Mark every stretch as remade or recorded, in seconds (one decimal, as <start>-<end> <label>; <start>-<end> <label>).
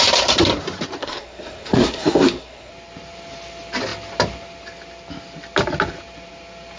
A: 0.0-1.0 recorded; 1.0-2.7 remade; 2.7-6.8 recorded